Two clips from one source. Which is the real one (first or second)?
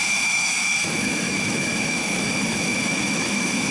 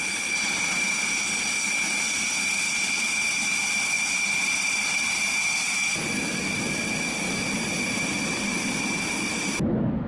second